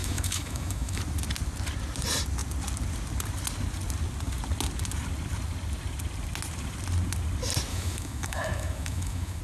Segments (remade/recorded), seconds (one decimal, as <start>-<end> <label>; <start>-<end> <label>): 0.0-1.0 remade; 1.0-7.7 recorded; 7.7-9.4 remade